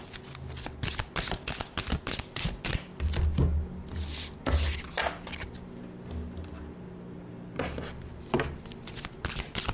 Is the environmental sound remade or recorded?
recorded